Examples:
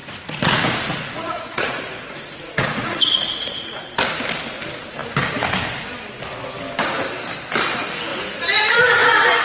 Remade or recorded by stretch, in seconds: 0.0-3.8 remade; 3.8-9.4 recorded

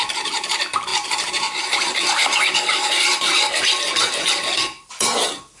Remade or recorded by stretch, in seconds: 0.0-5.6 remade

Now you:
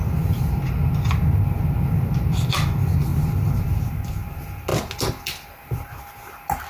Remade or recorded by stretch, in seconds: 0.0-6.7 recorded

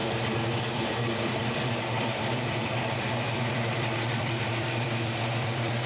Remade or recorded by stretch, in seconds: 0.0-0.6 recorded; 0.6-5.9 remade